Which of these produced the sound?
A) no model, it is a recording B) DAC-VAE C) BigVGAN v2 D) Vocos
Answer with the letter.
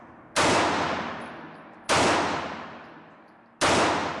A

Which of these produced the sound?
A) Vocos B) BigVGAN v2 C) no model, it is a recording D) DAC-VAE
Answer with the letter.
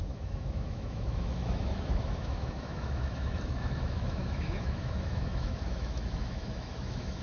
D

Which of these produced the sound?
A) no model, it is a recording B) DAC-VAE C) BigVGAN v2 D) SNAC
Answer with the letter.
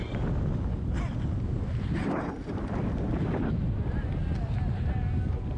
A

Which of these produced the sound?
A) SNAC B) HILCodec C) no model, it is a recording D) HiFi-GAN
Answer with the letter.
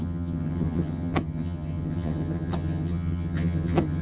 D